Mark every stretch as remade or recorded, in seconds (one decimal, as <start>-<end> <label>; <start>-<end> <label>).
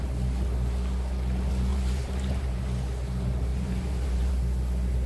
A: 0.0-1.7 recorded; 1.7-2.6 remade; 2.6-3.5 recorded; 3.5-4.3 remade; 4.3-5.1 recorded